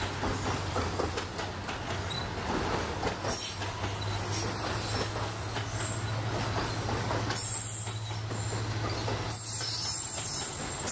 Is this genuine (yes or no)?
yes